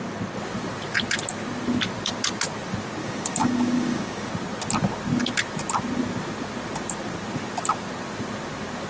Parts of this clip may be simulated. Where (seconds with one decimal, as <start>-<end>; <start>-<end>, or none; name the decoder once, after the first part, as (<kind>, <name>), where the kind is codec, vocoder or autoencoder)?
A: 3.0-4.3 (codec, DAC)